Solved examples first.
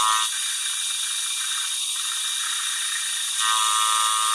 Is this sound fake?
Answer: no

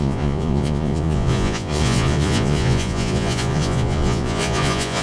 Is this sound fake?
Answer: yes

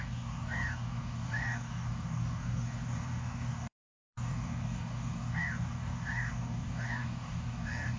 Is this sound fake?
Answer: yes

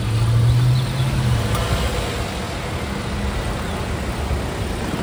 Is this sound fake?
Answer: no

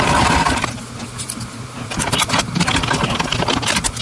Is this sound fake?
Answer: no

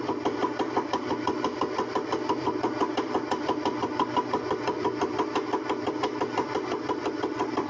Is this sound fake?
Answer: yes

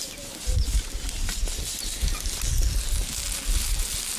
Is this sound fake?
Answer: no